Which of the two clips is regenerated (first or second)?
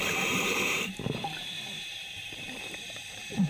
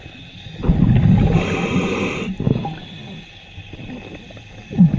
first